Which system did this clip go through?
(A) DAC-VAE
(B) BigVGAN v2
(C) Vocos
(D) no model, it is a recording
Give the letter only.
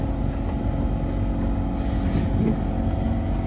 D